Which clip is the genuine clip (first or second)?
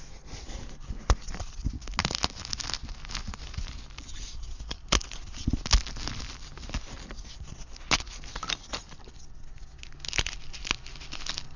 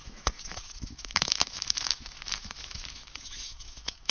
first